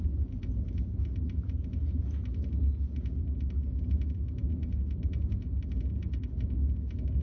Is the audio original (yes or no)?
yes